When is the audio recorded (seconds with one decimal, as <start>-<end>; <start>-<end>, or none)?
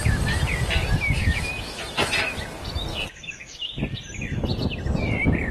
0.0-1.2; 1.8-2.9; 3.8-5.5